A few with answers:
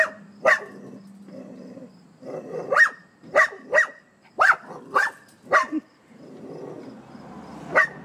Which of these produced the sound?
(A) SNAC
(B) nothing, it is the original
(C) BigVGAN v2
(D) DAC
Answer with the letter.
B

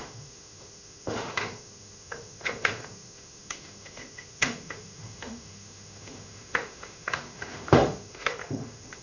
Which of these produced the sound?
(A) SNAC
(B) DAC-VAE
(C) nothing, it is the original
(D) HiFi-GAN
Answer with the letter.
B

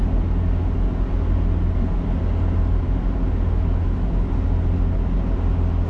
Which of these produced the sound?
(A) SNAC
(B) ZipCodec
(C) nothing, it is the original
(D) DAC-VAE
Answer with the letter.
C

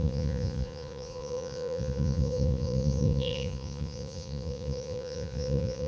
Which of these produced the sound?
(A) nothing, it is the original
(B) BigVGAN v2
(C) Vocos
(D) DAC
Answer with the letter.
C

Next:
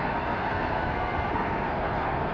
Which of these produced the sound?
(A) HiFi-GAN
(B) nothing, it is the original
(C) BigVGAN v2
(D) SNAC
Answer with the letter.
D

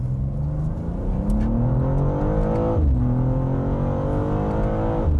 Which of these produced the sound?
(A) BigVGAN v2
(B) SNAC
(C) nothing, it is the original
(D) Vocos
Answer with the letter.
C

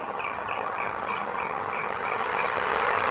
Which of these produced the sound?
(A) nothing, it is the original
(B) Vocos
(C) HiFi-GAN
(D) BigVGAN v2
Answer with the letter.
C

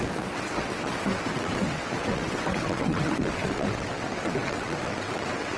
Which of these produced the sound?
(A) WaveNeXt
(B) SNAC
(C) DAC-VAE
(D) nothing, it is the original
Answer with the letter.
A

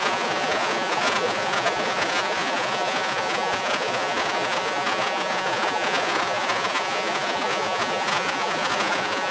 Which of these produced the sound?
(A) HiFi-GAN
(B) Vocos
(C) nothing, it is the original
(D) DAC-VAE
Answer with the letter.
B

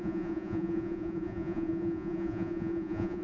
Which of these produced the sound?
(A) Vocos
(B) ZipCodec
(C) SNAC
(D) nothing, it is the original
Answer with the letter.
A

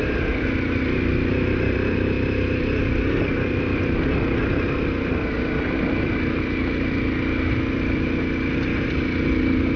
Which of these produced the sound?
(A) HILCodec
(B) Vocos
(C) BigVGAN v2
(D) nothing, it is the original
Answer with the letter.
D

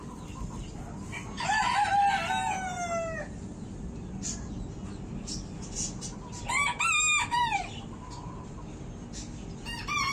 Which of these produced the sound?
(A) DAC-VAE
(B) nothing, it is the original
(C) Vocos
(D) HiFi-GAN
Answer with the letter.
B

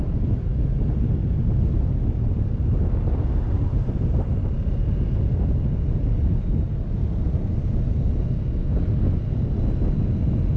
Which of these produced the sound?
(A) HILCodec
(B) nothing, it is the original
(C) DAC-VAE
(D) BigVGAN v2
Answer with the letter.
B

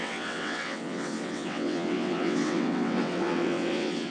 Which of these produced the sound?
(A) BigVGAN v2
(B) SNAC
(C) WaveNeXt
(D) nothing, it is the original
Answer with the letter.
C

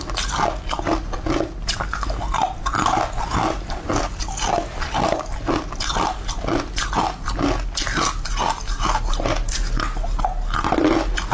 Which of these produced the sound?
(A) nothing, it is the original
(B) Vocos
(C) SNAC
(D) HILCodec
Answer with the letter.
A